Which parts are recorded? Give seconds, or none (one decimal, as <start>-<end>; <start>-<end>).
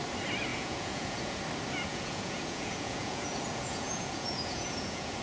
0.0-0.5; 1.4-1.9